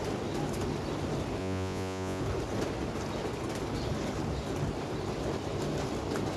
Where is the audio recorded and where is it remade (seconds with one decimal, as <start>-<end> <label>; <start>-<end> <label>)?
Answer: 0.0-1.4 recorded; 1.4-2.2 remade; 2.2-6.4 recorded